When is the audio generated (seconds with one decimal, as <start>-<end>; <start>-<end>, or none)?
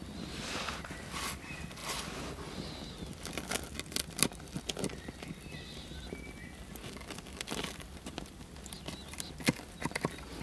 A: none